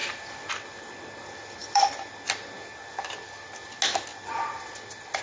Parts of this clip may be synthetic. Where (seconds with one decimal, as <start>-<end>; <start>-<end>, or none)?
0.0-0.5; 1.6-2.1; 4.1-4.7